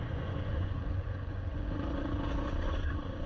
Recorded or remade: remade